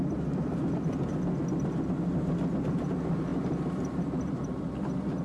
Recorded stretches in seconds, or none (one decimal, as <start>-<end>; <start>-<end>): 1.1-2.9